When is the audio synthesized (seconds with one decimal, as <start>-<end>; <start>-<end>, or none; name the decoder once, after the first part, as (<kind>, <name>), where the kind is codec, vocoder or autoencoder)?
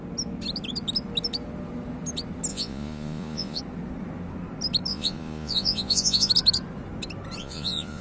2.5-3.6 (vocoder, Vocos); 4.9-6.3; 7.4-8.0